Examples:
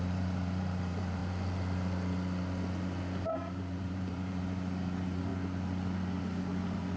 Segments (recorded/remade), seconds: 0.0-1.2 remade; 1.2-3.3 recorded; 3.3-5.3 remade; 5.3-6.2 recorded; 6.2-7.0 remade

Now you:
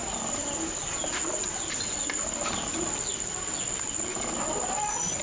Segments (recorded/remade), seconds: 0.0-5.2 recorded

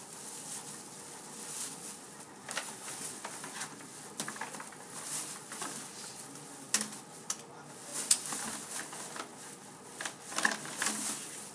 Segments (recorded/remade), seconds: 0.0-11.5 recorded

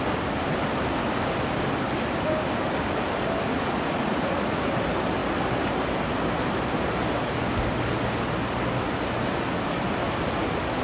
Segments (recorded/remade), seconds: 0.0-3.5 recorded; 3.5-4.7 remade; 4.7-10.8 recorded

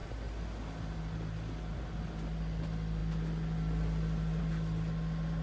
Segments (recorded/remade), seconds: 0.0-5.4 recorded